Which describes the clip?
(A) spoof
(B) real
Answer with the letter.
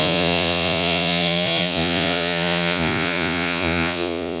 A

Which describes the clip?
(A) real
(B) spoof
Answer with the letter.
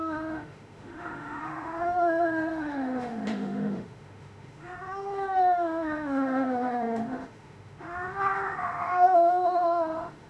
B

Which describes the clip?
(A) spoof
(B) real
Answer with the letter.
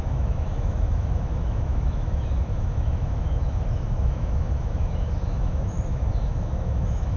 A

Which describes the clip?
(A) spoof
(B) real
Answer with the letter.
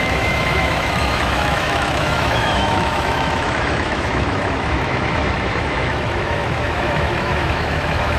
A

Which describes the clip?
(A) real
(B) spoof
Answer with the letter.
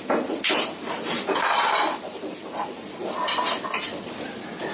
B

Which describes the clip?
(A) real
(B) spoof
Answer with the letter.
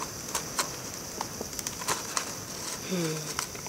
A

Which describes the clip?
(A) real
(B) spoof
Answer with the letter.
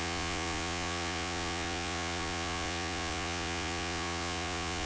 B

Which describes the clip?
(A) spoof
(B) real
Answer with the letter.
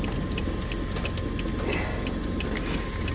B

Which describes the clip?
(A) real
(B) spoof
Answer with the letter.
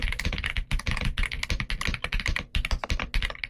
A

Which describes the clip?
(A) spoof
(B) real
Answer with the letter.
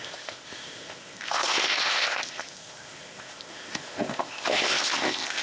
A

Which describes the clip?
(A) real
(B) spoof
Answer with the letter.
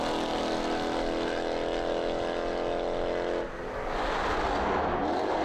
A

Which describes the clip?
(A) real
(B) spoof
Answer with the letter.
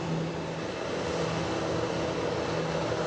A